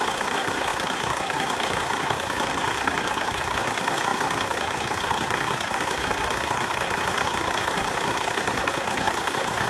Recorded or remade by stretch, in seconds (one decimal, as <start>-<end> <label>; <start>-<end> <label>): 0.0-9.7 remade